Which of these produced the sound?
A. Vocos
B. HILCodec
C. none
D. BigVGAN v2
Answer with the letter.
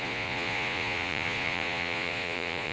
A